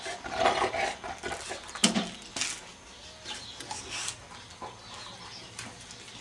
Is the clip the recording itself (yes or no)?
yes